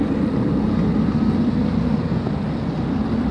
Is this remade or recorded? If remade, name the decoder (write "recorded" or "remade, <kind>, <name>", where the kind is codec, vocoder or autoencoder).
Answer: recorded